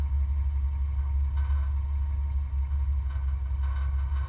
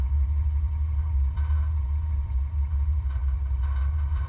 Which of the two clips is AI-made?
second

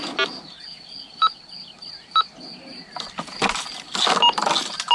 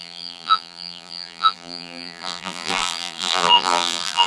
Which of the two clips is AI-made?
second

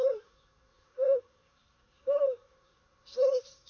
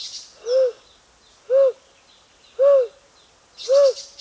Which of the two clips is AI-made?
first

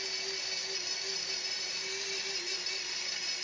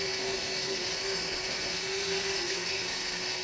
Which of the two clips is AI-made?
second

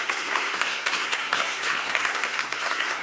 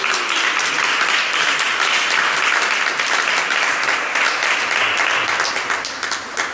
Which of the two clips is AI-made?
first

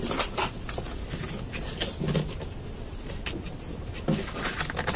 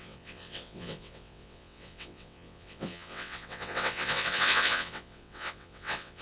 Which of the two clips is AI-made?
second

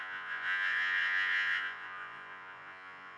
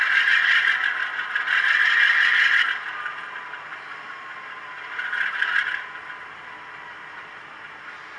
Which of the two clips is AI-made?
first